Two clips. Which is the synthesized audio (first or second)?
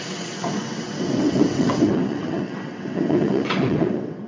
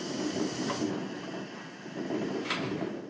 first